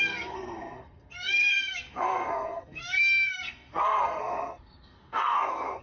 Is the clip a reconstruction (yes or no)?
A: yes